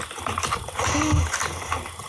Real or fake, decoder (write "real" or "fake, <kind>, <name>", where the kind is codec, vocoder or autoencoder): real